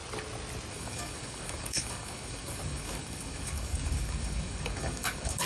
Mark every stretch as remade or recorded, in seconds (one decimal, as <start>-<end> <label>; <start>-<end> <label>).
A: 0.0-0.7 recorded; 0.7-5.5 remade